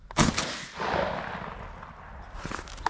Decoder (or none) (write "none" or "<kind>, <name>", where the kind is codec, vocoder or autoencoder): none